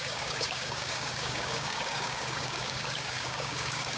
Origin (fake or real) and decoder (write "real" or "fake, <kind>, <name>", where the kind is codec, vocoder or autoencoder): fake, codec, DAC